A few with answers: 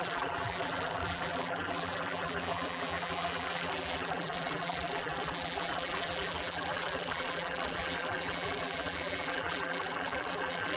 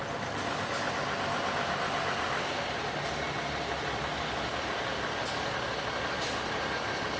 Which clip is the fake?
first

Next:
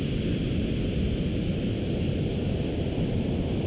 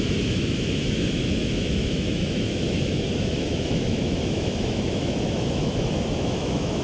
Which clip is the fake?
second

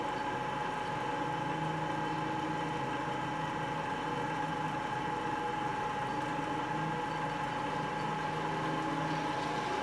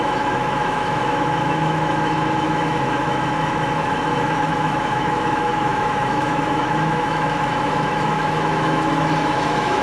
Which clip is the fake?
second